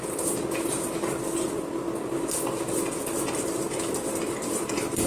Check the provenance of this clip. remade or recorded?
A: recorded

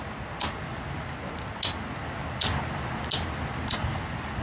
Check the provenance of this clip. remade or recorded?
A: recorded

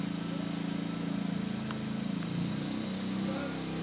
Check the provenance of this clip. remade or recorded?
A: recorded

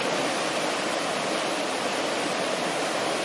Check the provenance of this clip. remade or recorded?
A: remade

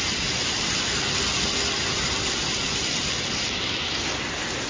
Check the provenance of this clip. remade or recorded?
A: recorded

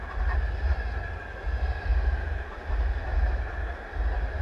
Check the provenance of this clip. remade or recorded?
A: recorded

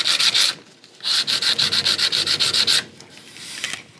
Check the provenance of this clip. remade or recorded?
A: recorded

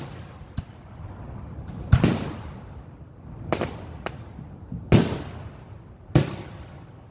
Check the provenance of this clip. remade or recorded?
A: recorded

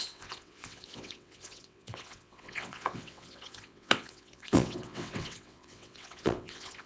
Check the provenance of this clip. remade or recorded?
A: remade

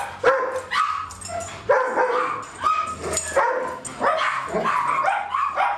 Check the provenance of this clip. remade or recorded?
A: recorded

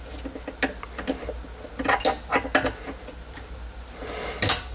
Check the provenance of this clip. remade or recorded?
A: recorded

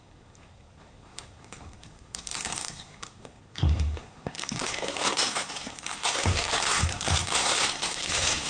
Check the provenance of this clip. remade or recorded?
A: remade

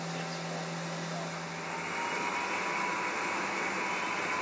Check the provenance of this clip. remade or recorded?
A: recorded